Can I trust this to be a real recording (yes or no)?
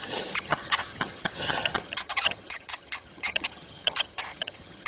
no